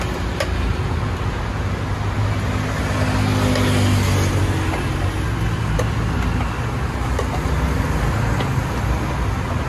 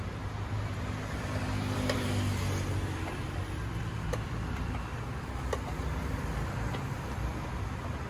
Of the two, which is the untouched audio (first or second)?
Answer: first